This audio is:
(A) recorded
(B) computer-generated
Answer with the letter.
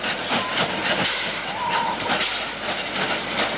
A